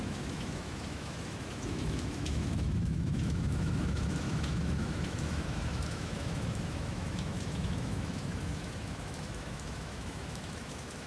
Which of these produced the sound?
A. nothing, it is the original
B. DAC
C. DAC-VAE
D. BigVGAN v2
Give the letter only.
C